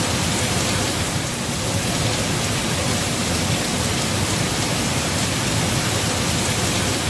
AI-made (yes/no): no